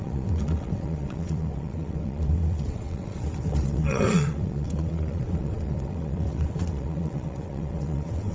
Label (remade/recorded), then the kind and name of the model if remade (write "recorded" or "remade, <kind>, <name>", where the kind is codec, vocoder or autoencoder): remade, vocoder, WaveNeXt